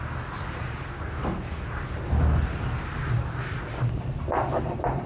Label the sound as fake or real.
real